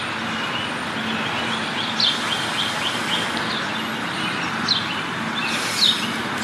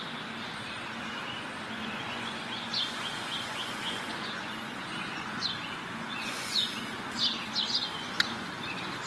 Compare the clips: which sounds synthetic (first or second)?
second